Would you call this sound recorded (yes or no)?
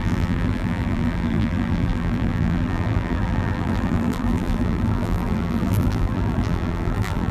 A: no